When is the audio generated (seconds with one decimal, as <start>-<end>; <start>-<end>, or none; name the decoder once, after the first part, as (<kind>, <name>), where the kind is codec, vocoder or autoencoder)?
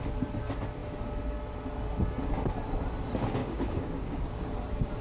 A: 3.4-4.5 (codec, DAC)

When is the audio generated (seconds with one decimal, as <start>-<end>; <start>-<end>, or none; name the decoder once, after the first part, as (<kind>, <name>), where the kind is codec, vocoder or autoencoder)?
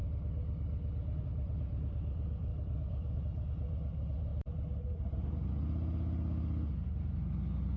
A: 2.5-3.2 (codec, DAC)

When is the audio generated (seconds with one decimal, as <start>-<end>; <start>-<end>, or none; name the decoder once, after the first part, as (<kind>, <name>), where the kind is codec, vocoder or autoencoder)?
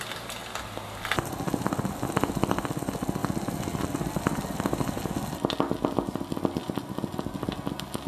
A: none